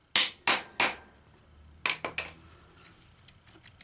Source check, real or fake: real